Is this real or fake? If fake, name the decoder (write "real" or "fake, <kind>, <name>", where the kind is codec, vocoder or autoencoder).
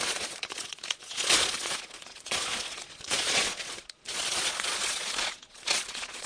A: fake, vocoder, Vocos